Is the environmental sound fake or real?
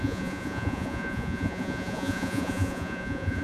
fake